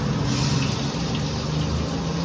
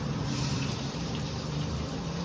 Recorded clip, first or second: first